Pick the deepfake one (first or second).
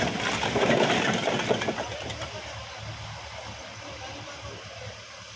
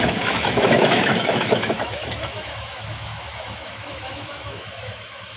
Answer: second